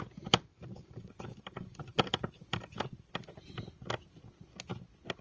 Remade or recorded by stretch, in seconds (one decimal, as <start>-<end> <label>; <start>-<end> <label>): 0.0-0.5 recorded; 0.5-3.6 remade; 3.6-5.2 recorded